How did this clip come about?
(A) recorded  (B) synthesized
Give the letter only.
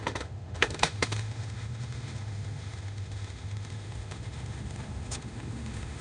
B